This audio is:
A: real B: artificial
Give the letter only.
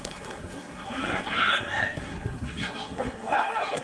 B